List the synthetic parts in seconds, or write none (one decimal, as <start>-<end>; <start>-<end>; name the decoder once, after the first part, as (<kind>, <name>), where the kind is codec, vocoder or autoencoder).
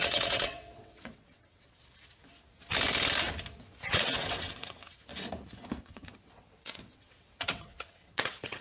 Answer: 0.0-1.8 (vocoder, WaveNeXt); 3.6-5.1; 5.8-8.6